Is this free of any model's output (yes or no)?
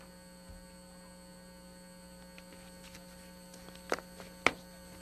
yes